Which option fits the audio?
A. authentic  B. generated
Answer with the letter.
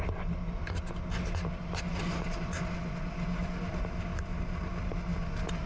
A